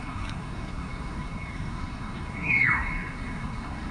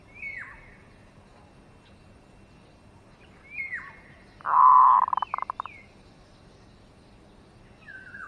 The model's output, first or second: first